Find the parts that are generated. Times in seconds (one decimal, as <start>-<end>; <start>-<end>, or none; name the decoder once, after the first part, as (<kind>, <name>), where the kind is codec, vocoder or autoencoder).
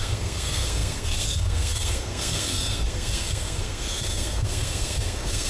0.0-5.5 (codec, SNAC)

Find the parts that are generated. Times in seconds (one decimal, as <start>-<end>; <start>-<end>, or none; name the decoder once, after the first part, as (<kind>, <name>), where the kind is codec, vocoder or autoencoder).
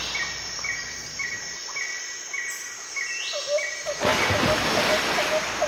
none